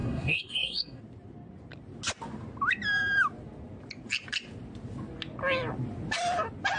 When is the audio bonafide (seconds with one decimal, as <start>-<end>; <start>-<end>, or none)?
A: 1.0-6.8